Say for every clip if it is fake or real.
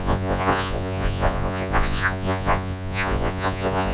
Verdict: fake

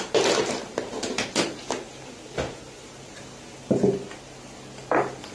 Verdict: real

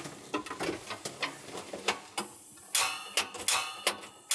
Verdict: real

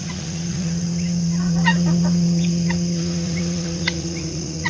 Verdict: fake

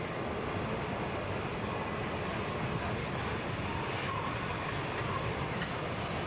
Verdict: real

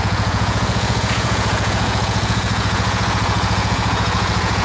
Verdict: fake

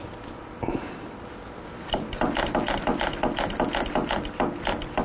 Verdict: real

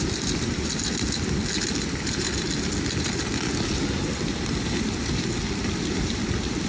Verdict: real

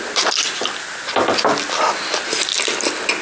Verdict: real